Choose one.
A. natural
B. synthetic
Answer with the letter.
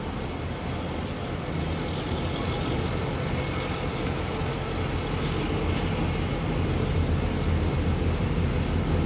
A